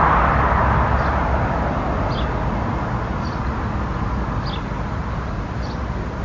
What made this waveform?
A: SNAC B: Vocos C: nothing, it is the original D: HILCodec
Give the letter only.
C